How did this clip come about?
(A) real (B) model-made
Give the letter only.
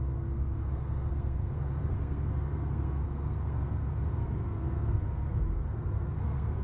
B